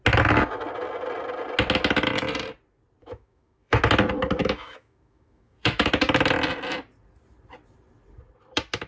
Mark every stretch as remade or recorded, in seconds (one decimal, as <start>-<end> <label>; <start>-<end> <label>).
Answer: 0.0-3.0 recorded; 3.0-3.8 remade; 3.8-4.4 recorded; 4.4-5.9 remade; 5.9-8.9 recorded

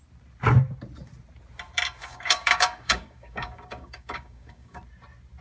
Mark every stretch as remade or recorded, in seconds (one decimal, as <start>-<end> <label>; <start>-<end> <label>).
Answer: 0.0-2.0 recorded; 2.0-4.8 remade; 4.8-5.4 recorded

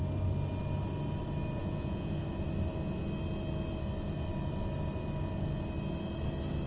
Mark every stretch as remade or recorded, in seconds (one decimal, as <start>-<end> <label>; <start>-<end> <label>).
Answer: 0.0-1.6 recorded; 1.6-2.2 remade; 2.2-6.7 recorded

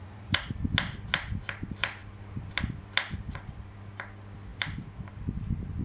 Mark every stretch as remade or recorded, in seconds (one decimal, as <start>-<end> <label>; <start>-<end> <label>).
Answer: 0.0-0.5 remade; 0.5-5.8 recorded

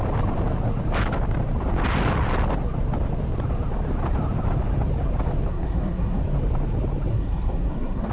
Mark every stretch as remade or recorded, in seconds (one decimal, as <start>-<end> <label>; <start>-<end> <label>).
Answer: 0.0-5.5 recorded; 5.5-6.2 remade; 6.2-7.1 recorded; 7.1-8.1 remade

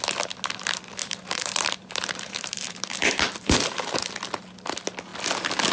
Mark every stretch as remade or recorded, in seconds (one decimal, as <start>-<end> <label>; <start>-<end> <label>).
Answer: 0.0-1.0 recorded; 1.0-4.0 remade; 4.0-5.7 recorded

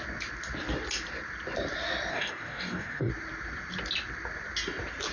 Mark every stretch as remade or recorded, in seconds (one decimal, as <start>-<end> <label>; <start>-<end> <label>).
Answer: 0.0-2.1 recorded; 2.1-3.1 remade; 3.1-5.1 recorded